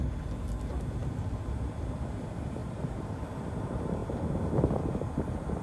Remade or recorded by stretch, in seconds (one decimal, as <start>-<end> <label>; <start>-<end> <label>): 0.0-2.6 recorded; 2.6-3.2 remade; 3.2-5.6 recorded